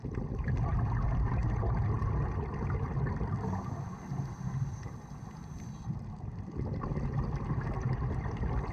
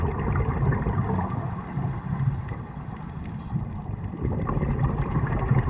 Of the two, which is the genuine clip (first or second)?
first